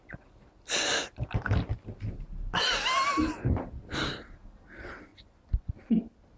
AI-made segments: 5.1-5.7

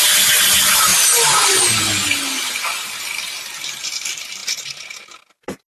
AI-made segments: none

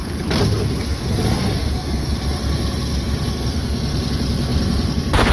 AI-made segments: none